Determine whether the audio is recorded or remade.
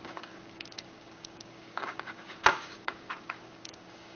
remade